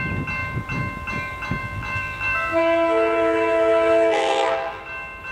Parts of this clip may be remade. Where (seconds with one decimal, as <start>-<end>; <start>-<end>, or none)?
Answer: 1.6-4.8